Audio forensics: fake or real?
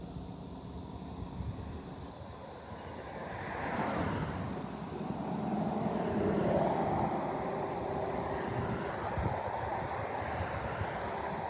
real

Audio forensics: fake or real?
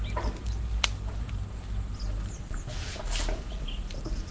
real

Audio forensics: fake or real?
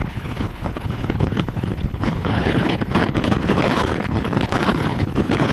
fake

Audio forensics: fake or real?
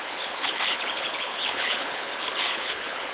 fake